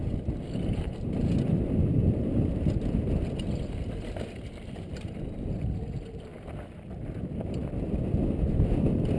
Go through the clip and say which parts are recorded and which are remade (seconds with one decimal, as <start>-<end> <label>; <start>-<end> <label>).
0.0-4.7 recorded; 4.7-9.2 remade